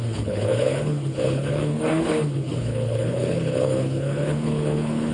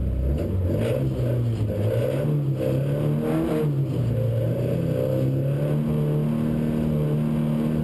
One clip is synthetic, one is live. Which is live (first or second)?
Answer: second